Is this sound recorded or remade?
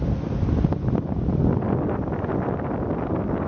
recorded